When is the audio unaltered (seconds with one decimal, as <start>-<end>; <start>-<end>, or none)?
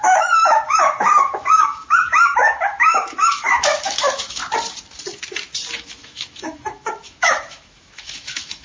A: 4.4-5.7